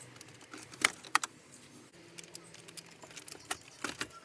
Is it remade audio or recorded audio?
recorded